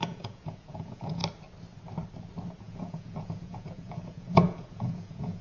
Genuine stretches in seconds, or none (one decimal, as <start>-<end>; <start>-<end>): 1.2-2.6